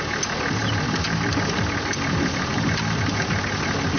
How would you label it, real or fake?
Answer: real